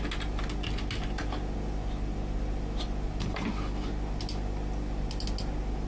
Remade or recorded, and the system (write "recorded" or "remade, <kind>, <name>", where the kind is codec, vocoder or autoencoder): recorded